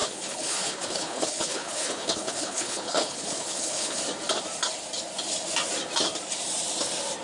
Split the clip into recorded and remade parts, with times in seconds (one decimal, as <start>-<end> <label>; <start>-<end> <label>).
0.0-4.0 remade; 4.0-7.2 recorded